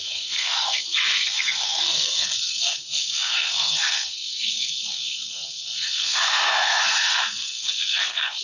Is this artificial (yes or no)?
yes